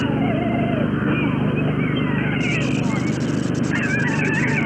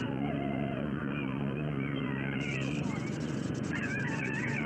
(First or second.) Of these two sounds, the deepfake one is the second